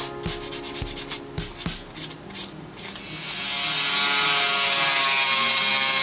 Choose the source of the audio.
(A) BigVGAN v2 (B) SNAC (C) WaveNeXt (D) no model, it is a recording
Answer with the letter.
D